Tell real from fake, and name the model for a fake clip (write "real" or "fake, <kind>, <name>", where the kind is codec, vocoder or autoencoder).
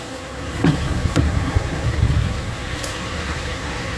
fake, codec, SNAC